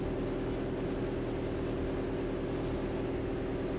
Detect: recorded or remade recorded